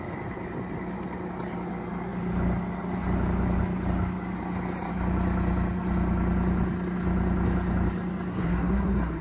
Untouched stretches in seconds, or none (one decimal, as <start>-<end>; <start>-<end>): 0.0-8.3